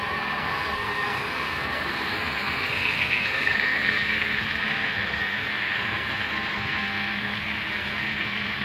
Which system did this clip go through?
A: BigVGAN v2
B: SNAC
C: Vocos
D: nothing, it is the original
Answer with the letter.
B